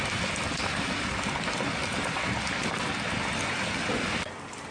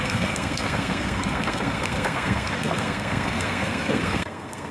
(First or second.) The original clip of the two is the first